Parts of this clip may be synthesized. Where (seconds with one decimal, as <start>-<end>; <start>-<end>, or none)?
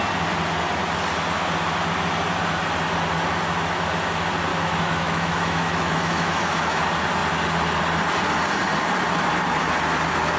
4.5-6.8